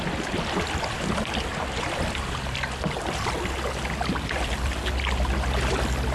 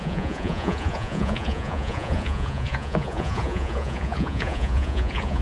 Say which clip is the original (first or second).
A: first